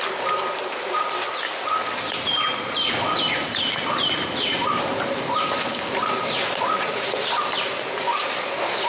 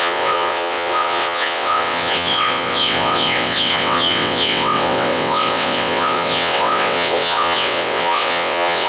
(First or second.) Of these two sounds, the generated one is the second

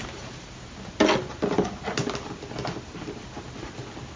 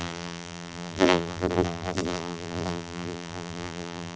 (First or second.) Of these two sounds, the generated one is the second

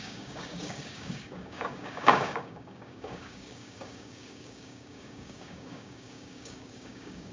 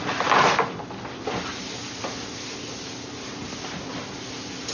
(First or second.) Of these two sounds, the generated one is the first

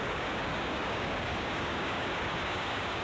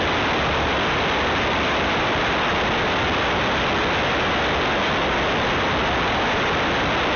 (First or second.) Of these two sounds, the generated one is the first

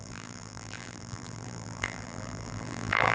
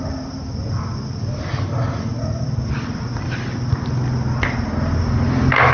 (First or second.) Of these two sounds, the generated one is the first